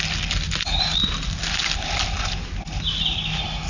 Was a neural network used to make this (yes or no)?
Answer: no